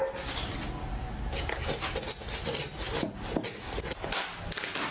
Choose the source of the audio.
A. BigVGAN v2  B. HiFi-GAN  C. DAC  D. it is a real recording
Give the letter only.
D